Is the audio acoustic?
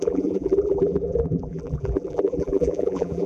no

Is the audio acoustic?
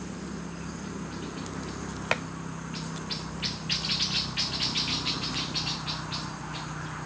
yes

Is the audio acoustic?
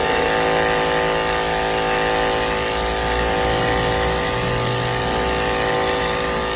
yes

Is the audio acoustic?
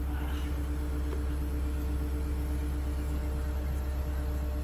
yes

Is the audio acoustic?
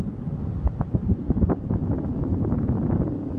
yes